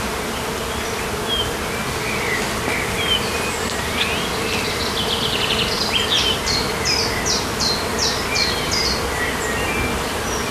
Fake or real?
real